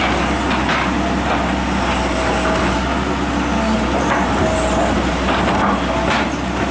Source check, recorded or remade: recorded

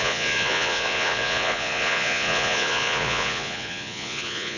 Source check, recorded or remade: remade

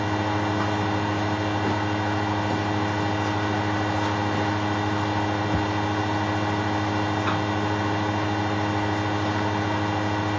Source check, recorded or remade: recorded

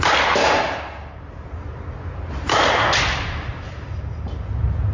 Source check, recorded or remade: recorded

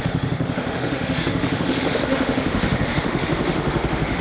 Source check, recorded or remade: remade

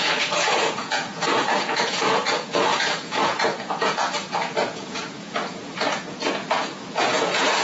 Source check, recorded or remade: remade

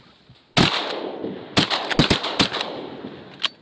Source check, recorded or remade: recorded